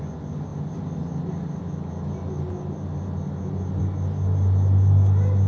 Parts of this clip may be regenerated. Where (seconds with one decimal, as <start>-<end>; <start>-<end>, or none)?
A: none